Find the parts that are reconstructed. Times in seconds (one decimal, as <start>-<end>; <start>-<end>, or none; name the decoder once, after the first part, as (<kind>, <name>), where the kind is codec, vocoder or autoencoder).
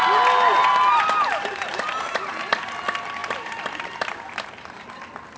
0.5-2.8 (vocoder, BigVGAN v2); 3.2-4.8